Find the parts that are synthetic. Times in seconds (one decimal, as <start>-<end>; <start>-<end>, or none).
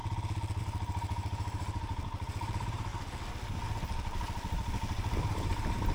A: 0.6-2.9; 5.2-5.9